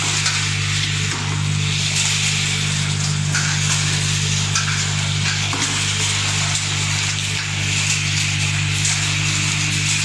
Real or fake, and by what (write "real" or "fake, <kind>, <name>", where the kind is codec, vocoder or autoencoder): real